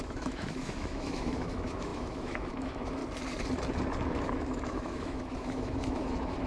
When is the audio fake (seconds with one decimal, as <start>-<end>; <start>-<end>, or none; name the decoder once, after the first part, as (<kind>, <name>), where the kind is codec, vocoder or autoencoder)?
0.0-3.0 (autoencoder, DAC-VAE); 4.1-6.5